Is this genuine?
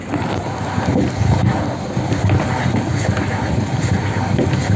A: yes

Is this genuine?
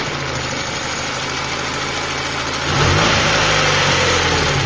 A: yes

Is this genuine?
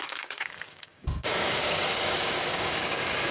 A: no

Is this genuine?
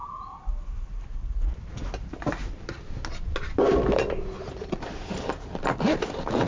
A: yes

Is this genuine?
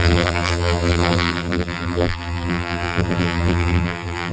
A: no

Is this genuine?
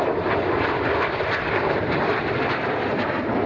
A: no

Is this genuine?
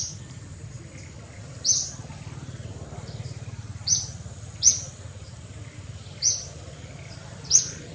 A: no